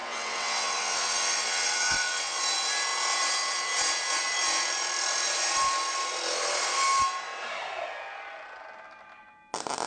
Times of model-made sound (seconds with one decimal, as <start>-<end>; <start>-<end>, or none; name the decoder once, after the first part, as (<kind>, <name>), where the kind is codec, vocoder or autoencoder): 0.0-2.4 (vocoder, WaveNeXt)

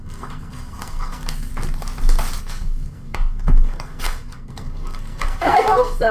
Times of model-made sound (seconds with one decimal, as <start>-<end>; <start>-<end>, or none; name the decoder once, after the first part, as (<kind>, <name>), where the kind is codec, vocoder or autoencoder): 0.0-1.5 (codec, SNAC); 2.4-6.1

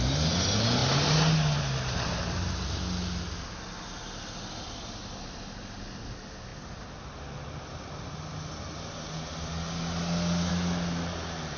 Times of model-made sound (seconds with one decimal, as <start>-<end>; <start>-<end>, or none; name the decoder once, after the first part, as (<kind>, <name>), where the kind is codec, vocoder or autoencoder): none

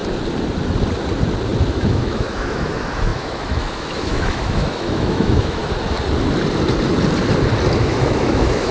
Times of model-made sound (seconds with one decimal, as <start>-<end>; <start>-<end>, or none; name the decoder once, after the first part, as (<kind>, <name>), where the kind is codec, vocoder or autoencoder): 1.7-5.6 (autoencoder, DAC-VAE); 7.8-8.7